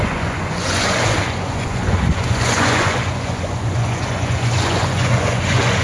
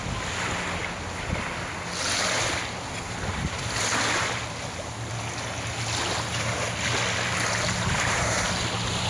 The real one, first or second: second